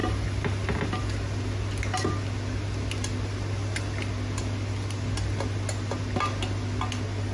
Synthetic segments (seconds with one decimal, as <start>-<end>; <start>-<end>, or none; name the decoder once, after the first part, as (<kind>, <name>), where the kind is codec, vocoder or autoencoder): none